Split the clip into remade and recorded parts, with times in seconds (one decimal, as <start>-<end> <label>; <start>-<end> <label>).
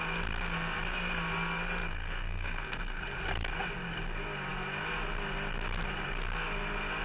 0.0-1.9 recorded; 1.9-3.0 remade; 3.0-7.0 recorded